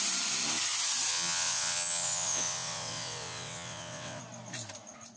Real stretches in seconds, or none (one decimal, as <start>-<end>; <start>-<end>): 0.0-1.1; 4.2-5.2